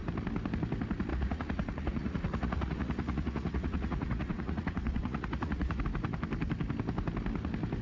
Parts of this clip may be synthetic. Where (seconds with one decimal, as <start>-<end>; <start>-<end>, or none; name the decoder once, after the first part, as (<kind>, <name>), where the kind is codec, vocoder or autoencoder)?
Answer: 1.1-5.8 (vocoder, Vocos)